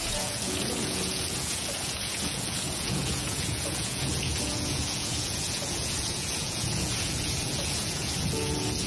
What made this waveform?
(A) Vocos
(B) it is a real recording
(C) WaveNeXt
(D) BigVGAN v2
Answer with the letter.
A